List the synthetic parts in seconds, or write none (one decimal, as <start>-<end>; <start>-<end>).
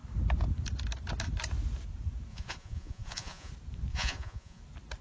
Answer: 2.3-3.5; 3.9-4.6